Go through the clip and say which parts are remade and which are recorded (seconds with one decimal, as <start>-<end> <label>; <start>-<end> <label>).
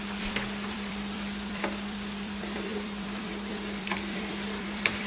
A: 0.0-5.1 remade